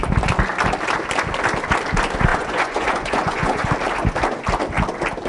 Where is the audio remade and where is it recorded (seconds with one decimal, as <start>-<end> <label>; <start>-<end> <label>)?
0.0-2.3 recorded; 2.3-3.7 remade; 3.7-5.3 recorded